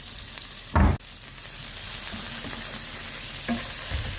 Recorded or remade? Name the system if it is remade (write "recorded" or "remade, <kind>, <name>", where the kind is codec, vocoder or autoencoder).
recorded